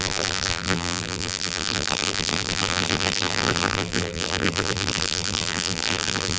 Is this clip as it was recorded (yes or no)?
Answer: no